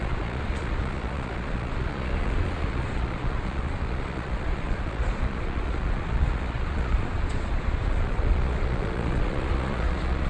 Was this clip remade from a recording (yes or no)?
yes